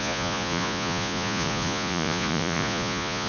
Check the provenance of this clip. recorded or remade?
remade